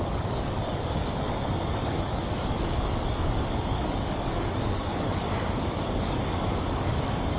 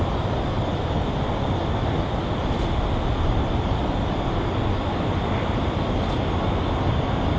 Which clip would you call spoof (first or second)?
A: first